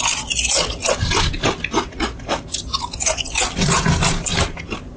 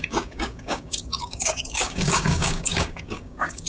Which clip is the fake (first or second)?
second